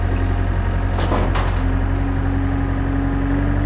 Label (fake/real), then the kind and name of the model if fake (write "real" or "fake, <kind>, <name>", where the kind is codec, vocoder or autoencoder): real